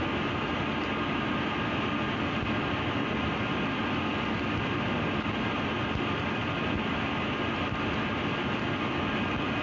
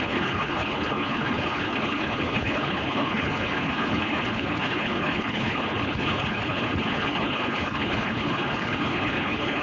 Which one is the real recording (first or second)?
first